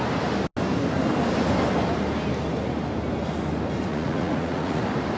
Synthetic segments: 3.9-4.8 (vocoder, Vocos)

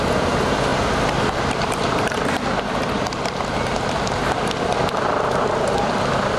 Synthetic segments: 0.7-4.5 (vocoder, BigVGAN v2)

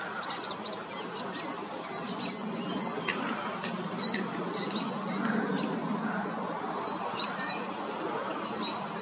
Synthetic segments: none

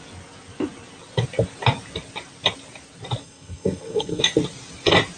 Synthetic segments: 3.2-4.2 (codec, SNAC)

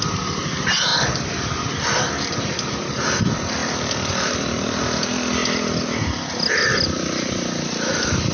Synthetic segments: 0.0-3.6 (vocoder, BigVGAN v2); 4.1-5.4; 6.5-8.3

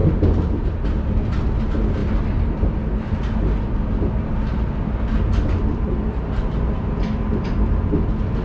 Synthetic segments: 0.0-1.6 (vocoder, BigVGAN v2)

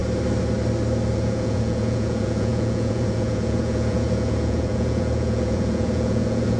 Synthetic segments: 1.1-6.6 (vocoder, Vocos)

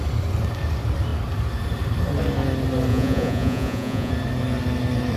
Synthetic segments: 2.9-4.1 (vocoder, Vocos)